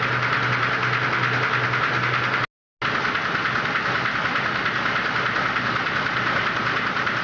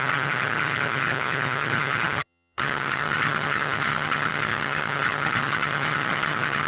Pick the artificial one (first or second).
second